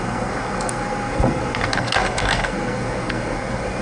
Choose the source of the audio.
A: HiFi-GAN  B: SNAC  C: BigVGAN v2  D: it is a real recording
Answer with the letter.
B